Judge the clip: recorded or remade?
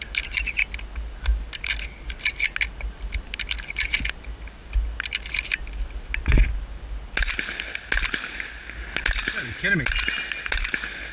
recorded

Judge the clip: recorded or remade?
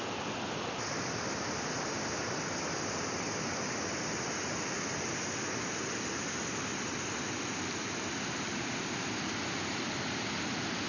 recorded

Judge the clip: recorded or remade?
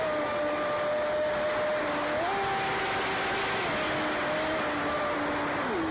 recorded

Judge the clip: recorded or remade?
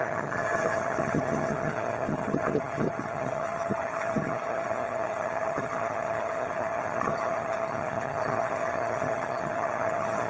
remade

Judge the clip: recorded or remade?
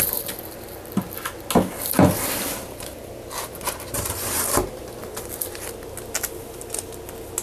recorded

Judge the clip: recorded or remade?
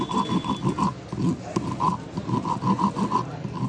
recorded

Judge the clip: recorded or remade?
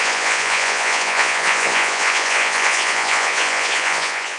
remade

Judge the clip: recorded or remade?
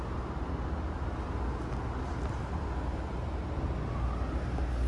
recorded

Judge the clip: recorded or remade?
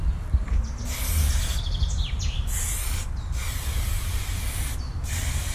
recorded